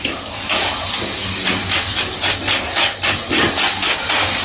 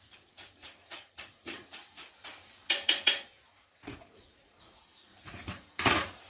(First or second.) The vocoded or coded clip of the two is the second